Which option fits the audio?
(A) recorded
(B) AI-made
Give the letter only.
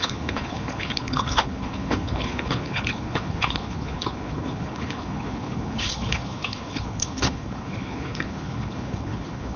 B